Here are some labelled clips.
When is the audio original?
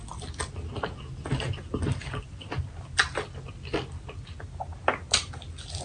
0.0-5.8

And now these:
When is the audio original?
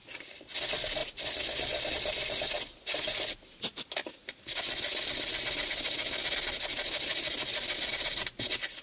0.0-8.8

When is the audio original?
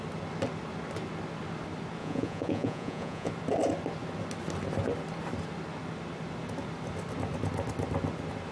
0.0-2.0; 3.3-8.5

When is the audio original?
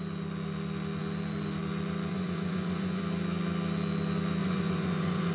0.0-2.1; 3.0-4.4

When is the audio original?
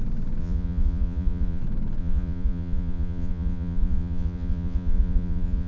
0.0-0.4; 1.6-2.0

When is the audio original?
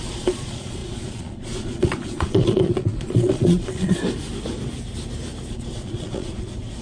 4.0-5.5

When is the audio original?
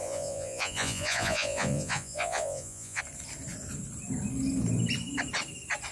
3.0-5.9